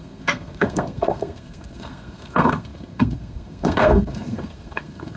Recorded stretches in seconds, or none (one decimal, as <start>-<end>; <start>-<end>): none